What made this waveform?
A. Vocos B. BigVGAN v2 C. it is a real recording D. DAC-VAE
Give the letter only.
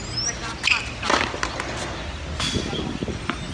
C